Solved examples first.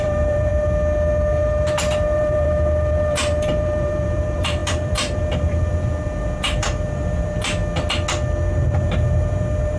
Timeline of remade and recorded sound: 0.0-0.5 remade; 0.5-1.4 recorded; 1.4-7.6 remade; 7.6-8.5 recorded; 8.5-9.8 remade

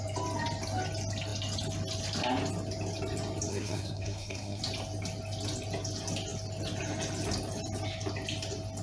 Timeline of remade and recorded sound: 0.0-3.5 recorded; 3.5-4.6 remade; 4.6-8.8 recorded

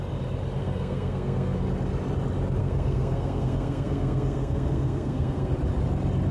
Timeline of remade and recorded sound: 0.0-0.6 recorded; 0.6-1.6 remade; 1.6-2.6 recorded; 2.6-5.5 remade; 5.5-6.3 recorded

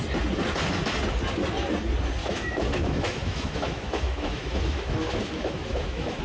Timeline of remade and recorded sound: 0.0-2.2 recorded; 2.2-6.2 remade

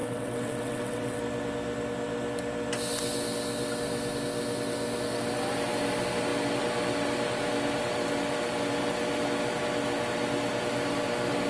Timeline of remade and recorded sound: 0.0-1.2 remade; 1.2-11.5 recorded

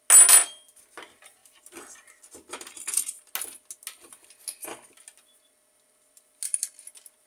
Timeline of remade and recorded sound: 0.0-7.3 recorded

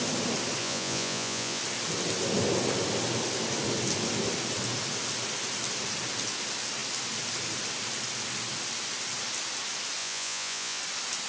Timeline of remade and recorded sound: 0.0-0.6 recorded; 0.6-1.6 remade; 1.6-10.0 recorded; 10.0-10.8 remade; 10.8-11.3 recorded